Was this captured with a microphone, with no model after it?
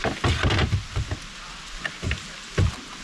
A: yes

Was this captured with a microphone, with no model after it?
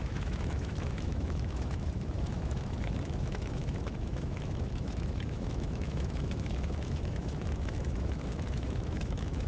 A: no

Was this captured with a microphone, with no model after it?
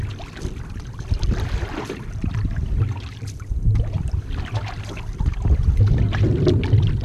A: yes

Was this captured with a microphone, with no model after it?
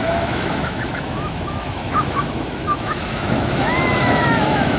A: no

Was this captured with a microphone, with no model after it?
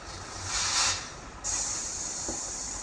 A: yes